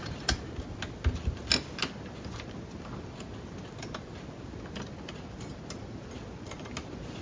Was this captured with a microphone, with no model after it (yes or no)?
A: yes